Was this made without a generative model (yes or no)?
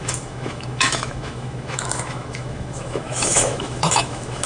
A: no